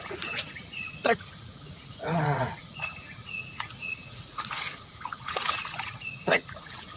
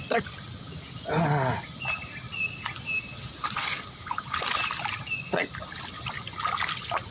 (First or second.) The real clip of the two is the second